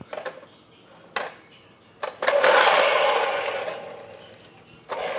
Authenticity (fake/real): real